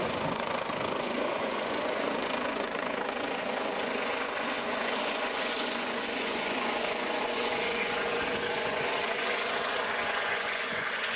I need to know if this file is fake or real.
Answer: fake